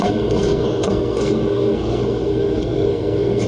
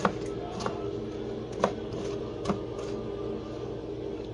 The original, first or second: second